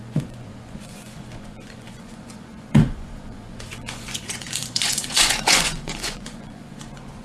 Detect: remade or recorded remade